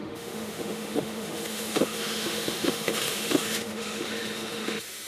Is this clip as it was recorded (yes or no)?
no